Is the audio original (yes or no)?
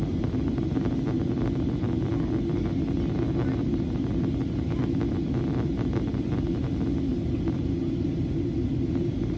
yes